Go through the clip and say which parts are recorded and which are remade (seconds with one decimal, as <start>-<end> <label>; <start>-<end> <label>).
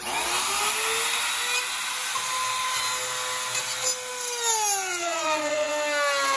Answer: 0.0-4.9 recorded; 4.9-5.7 remade; 5.7-6.4 recorded